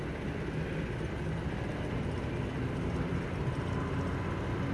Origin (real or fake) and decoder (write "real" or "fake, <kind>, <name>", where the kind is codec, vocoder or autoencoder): real